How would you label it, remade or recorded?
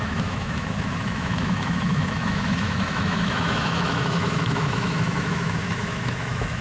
remade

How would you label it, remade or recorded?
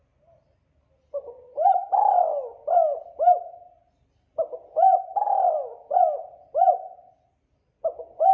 recorded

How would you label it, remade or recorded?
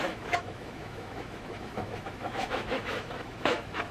remade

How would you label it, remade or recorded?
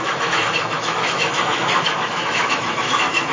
remade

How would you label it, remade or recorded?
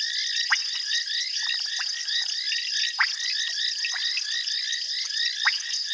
recorded